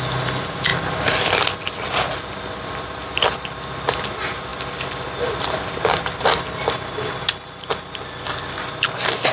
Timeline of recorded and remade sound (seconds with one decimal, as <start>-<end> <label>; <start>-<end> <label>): 0.0-9.3 recorded